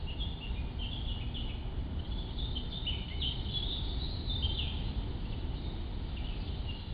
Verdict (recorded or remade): recorded